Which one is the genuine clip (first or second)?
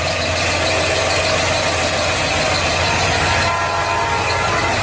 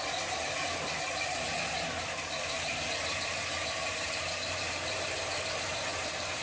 first